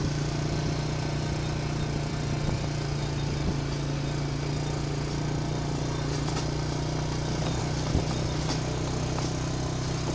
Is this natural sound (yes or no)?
yes